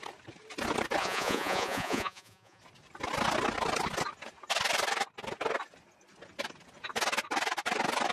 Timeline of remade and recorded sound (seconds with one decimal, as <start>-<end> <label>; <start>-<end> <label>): 0.0-1.0 recorded; 1.0-2.6 remade; 2.6-8.1 recorded